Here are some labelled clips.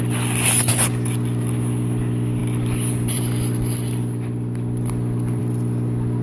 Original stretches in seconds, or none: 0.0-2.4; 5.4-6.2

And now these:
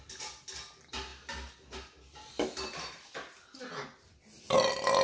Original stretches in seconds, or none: 0.0-5.0

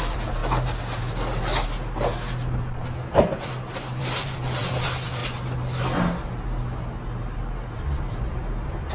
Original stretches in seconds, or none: 0.4-3.5; 5.2-8.1

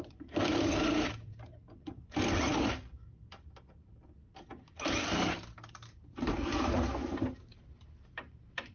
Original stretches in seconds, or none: 4.2-5.7

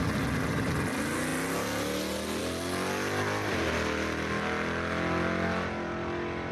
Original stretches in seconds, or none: 0.0-6.5

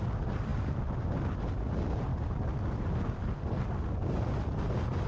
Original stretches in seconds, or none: 0.0-5.1

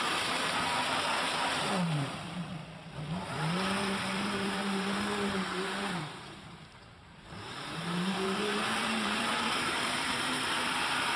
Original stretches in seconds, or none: 2.5-3.2